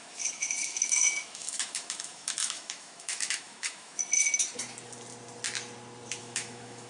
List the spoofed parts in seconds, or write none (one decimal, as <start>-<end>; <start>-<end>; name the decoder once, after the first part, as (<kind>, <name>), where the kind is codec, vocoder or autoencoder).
0.0-4.0 (autoencoder, DAC-VAE); 6.2-6.9